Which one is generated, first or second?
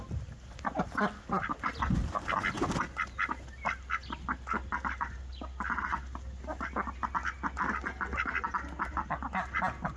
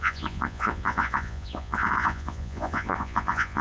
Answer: second